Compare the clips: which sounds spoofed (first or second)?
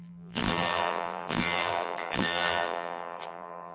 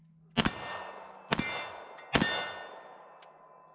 first